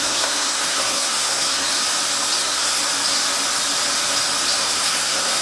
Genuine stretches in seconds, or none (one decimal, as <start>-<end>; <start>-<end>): 1.7-2.4; 2.8-4.6